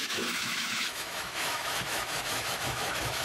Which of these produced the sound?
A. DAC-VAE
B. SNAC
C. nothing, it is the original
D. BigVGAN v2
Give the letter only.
A